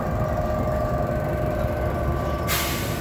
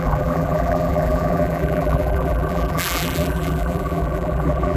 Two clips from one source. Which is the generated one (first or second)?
second